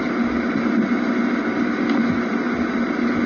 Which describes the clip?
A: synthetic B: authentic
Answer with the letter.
B